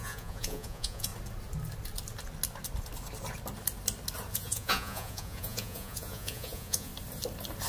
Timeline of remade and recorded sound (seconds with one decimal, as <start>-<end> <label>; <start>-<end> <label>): 0.0-1.1 remade; 1.1-4.3 recorded; 4.3-6.9 remade; 6.9-7.7 recorded